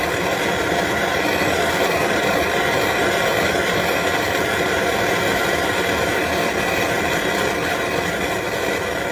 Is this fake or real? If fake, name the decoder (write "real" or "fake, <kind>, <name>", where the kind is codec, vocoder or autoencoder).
real